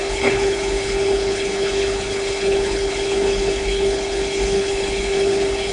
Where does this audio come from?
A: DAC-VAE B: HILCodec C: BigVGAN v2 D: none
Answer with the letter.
B